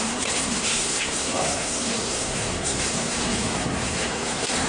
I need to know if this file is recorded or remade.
remade